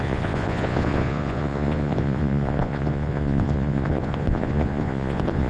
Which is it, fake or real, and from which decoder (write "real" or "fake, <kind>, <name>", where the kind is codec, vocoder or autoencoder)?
fake, vocoder, Vocos